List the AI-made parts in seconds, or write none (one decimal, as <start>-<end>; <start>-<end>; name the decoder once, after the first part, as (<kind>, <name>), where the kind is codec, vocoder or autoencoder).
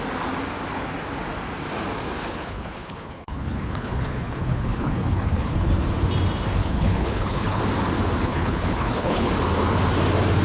2.2-5.7 (codec, HILCodec); 6.6-7.6; 8.2-9.3